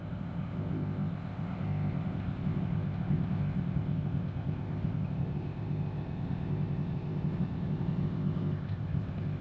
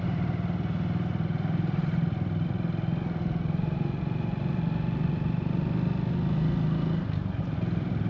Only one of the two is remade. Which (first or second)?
first